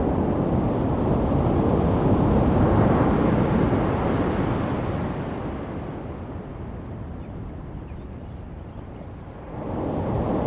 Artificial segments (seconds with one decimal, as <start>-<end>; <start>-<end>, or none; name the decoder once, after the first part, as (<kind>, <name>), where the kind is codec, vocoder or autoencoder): none